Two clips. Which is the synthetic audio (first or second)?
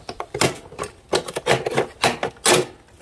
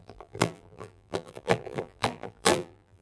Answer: second